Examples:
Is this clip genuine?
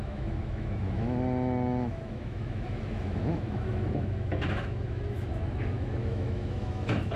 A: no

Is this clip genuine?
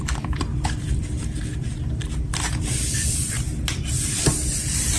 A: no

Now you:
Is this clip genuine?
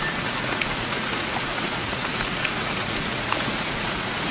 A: no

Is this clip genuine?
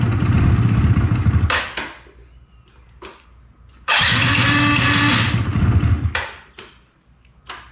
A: yes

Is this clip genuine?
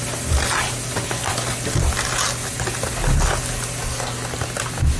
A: yes